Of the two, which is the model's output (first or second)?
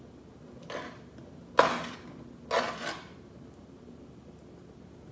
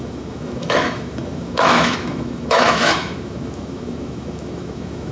second